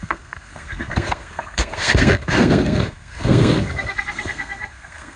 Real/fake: fake